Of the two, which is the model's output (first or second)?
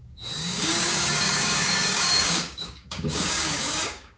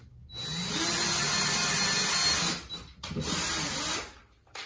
first